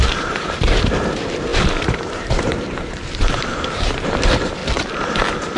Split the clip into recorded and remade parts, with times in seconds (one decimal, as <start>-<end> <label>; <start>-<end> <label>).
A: 0.0-4.6 remade; 4.6-5.6 recorded